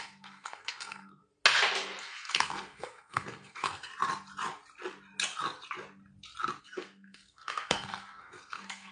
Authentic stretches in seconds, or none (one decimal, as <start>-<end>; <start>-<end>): 1.2-2.0; 3.9-6.6